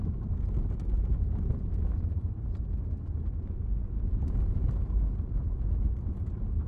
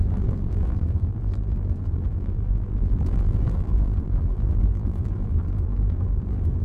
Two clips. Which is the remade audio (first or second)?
second